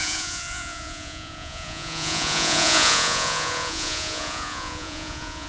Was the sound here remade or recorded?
remade